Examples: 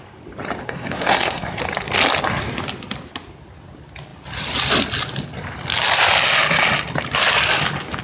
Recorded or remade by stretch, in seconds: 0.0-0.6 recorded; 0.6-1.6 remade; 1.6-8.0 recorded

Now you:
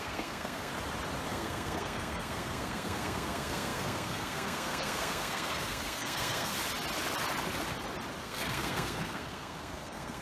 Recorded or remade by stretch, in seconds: 0.0-0.7 remade; 0.7-1.3 recorded; 1.3-6.5 remade; 6.5-8.2 recorded; 8.2-10.2 remade

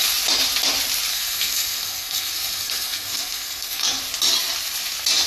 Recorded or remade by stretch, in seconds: 0.0-1.1 recorded; 1.1-4.0 remade; 4.0-5.3 recorded